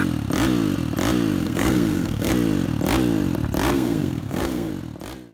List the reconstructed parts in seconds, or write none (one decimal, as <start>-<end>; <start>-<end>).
1.4-2.3; 3.7-4.7